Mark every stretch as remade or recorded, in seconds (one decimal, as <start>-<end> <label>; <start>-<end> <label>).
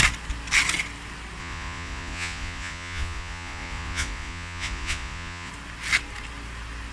0.0-1.4 recorded; 1.4-5.5 remade; 5.5-6.9 recorded